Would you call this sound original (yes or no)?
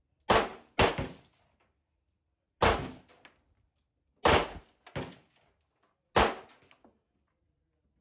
yes